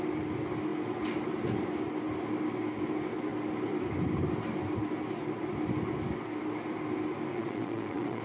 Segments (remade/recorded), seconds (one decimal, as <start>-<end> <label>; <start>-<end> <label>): 0.0-7.3 recorded; 7.3-8.2 remade